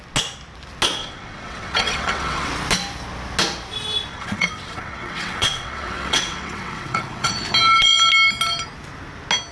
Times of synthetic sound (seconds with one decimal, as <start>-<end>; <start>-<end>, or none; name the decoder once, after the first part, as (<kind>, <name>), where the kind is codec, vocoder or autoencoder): 1.0-2.5 (vocoder, WaveNeXt); 4.1-7.3